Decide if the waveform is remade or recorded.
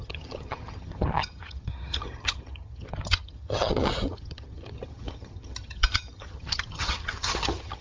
remade